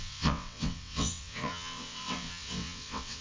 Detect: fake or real fake